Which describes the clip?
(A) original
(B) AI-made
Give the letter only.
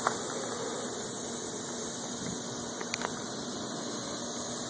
A